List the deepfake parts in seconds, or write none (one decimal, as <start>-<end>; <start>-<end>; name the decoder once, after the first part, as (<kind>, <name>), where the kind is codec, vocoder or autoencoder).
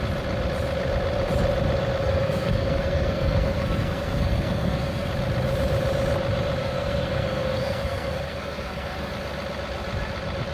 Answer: 2.0-5.1 (codec, SNAC); 6.6-9.1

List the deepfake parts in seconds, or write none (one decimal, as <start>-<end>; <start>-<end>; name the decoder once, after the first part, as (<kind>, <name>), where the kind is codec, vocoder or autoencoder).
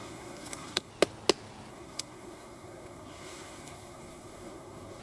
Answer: 0.0-0.9 (codec, SNAC); 1.7-5.0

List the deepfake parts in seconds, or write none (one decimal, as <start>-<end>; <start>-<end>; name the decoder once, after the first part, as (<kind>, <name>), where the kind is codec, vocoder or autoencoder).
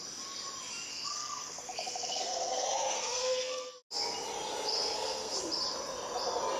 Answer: 0.9-3.7 (codec, SNAC); 4.7-5.4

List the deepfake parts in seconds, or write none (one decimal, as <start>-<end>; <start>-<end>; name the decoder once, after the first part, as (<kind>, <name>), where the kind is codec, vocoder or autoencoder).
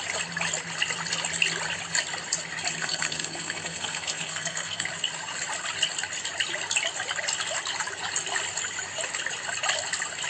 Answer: 2.8-4.9 (codec, SNAC)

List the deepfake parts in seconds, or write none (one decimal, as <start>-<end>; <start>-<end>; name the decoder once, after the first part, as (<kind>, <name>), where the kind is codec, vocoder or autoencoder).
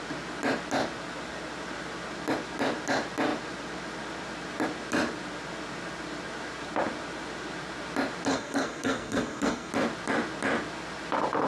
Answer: 8.3-9.7 (codec, SNAC)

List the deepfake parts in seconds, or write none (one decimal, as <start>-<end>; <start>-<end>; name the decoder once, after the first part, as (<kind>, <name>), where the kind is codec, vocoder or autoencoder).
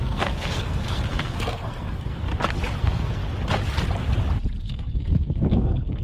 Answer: 0.0-2.3 (codec, SNAC); 2.8-3.2; 4.6-6.0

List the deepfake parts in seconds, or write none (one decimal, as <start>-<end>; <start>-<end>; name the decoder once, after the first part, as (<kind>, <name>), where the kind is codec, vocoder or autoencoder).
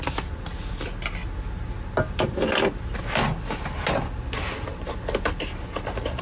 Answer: none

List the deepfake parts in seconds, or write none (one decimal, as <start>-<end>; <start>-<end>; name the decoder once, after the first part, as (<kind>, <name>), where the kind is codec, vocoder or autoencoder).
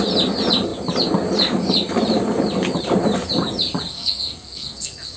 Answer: 3.9-5.2 (codec, SNAC)